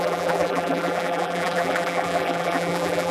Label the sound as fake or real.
fake